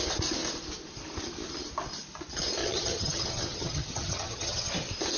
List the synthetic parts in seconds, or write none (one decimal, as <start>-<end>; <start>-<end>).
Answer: 2.6-4.7